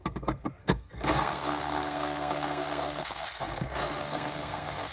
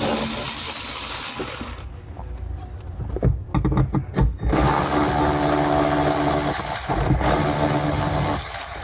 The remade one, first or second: first